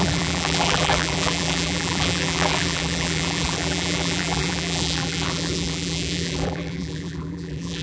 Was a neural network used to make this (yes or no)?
yes